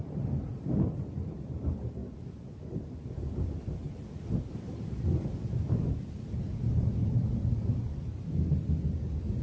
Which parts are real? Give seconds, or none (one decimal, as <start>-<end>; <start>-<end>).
0.0-2.0; 4.1-4.5; 5.9-7.0; 7.9-9.4